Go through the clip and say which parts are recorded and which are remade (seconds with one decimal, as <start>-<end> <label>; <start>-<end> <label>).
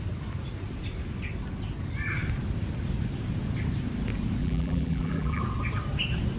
0.0-4.4 recorded; 4.4-5.4 remade; 5.4-6.4 recorded